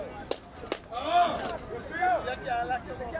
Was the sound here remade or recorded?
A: recorded